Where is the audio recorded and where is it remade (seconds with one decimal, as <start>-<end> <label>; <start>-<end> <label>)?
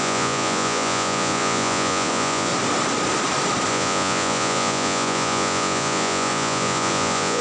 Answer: 0.0-2.5 remade; 2.5-3.7 recorded; 3.7-7.4 remade